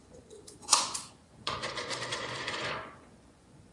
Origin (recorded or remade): remade